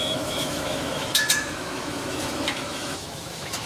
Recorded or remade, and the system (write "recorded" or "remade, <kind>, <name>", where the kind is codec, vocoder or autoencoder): remade, autoencoder, DAC-VAE